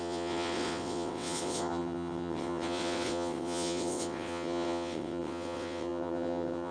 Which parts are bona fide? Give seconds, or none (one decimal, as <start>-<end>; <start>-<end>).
none